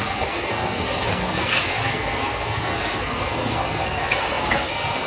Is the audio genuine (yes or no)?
no